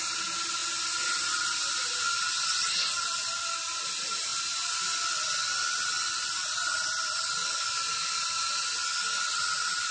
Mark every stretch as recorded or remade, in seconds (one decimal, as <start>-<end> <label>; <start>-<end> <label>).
0.0-9.9 recorded